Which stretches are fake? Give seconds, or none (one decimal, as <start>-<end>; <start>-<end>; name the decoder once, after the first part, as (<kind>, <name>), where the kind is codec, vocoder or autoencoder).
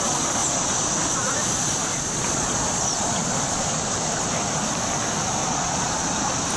1.9-3.7 (vocoder, Vocos); 5.4-6.1